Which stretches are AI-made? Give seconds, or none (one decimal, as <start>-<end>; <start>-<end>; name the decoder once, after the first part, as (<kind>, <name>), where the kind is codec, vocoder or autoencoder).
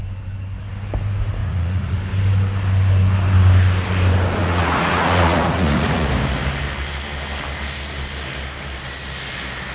1.4-2.0 (vocoder, Vocos); 4.4-6.1